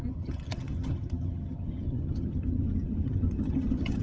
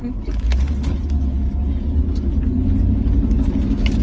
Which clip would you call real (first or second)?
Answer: second